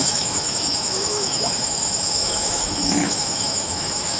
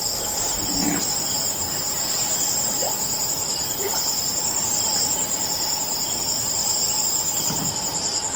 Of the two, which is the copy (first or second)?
first